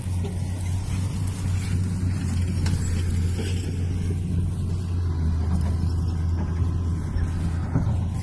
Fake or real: real